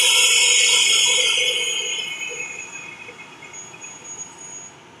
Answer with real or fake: real